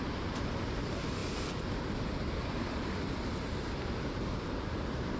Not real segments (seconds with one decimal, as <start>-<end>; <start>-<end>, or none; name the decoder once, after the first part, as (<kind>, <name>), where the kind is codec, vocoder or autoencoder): none